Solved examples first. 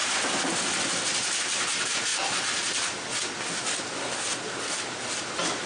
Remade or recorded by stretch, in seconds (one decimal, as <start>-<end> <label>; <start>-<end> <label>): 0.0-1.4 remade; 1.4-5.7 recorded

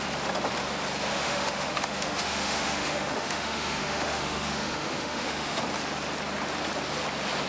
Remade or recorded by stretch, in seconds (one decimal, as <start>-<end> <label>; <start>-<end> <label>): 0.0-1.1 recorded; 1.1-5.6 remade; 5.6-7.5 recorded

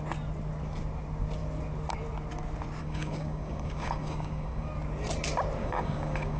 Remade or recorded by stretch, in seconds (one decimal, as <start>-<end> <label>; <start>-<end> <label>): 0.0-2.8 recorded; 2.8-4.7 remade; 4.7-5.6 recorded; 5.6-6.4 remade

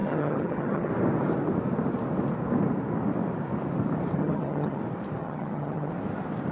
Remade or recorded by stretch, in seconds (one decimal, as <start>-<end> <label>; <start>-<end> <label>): 0.0-0.9 remade; 0.9-4.2 recorded; 4.2-4.8 remade; 4.8-5.2 recorded; 5.2-5.9 remade; 5.9-6.5 recorded

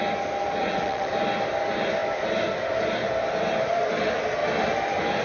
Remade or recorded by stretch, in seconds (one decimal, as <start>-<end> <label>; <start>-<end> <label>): 0.0-0.6 recorded; 0.6-1.1 remade; 1.1-5.2 recorded

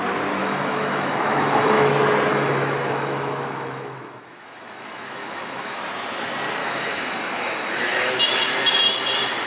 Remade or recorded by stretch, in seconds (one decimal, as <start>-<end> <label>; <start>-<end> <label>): 0.0-0.4 recorded; 0.4-1.9 remade; 1.9-2.3 recorded; 2.3-5.8 remade; 5.8-6.6 recorded; 6.6-8.1 remade; 8.1-9.5 recorded

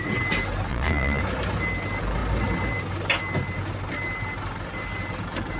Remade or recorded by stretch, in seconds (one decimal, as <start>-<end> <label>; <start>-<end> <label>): 0.0-0.7 recorded; 0.7-1.2 remade; 1.2-5.6 recorded